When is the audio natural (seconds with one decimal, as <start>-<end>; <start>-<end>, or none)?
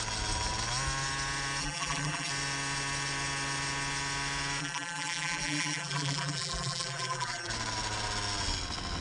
0.0-1.6; 2.3-4.6; 7.5-9.0